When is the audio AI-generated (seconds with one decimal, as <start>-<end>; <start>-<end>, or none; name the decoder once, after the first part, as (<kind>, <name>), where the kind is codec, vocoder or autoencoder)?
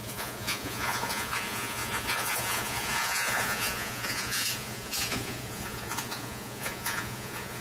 0.0-7.6 (vocoder, Vocos)